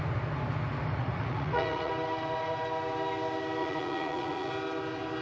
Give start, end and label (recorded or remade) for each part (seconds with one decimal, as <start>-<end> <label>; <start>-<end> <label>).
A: 0.0-0.9 recorded; 0.9-1.9 remade; 1.9-3.6 recorded; 3.6-4.5 remade; 4.5-5.2 recorded